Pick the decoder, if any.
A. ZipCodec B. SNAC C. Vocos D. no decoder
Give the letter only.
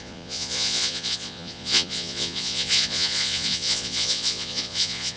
C